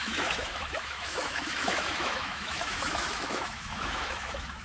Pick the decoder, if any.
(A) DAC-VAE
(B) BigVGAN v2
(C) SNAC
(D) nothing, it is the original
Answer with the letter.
A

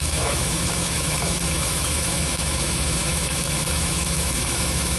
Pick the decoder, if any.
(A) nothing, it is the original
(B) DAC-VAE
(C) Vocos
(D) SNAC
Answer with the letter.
B